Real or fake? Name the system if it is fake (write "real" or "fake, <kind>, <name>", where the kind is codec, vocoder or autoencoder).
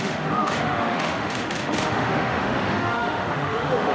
fake, autoencoder, DAC-VAE